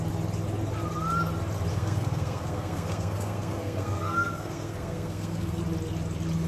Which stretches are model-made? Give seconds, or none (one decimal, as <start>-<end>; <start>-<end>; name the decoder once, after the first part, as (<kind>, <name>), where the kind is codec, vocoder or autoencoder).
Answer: 1.7-5.6 (codec, SNAC)